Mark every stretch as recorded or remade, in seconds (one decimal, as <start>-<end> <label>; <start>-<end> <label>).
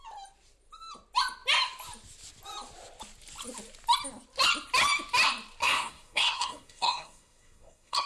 0.0-5.6 recorded; 5.6-8.1 remade